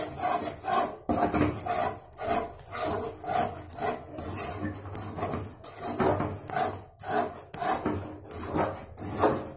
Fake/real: real